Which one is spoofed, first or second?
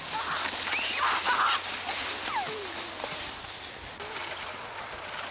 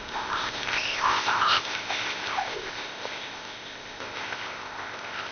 second